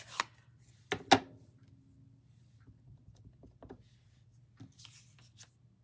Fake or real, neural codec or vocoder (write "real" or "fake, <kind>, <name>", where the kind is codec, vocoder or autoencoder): real